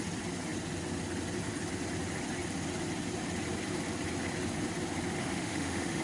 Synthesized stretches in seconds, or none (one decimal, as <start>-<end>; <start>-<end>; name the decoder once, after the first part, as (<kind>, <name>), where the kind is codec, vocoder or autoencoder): 5.2-6.0 (autoencoder, DAC-VAE)